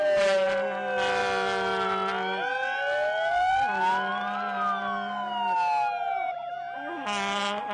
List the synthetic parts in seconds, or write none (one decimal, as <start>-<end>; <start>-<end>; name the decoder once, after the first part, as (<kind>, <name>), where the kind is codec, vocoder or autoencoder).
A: none

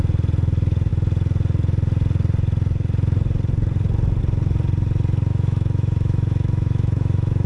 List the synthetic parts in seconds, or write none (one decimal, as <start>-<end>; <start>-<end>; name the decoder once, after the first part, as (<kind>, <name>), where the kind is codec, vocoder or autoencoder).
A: 5.3-7.5 (autoencoder, DAC-VAE)

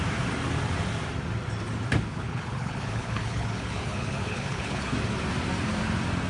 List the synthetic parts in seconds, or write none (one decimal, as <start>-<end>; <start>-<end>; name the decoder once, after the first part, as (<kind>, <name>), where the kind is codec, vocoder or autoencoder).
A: 2.1-4.9 (codec, HILCodec)

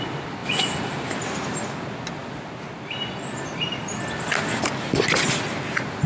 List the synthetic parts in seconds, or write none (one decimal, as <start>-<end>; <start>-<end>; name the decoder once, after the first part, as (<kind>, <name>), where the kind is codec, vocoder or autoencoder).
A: none

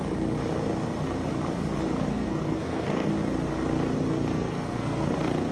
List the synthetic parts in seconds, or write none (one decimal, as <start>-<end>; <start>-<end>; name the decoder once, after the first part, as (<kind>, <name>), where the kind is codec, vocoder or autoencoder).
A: 2.1-3.1 (codec, SNAC); 4.3-5.1

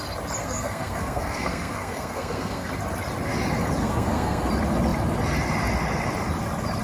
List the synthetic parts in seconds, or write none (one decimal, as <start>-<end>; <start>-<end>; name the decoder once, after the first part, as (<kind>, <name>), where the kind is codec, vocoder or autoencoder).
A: 0.4-2.7 (codec, SNAC); 3.8-4.5

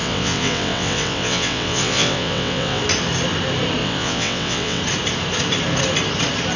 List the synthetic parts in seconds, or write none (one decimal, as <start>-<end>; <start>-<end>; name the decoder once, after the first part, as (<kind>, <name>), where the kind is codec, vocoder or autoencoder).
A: 0.0-2.8 (vocoder, WaveNeXt); 3.8-4.8